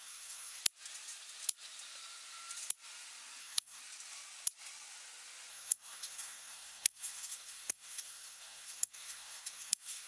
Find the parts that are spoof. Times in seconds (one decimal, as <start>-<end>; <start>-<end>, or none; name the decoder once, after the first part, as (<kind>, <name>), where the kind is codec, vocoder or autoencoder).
0.0-0.6 (codec, SNAC); 3.4-3.8; 5.5-10.1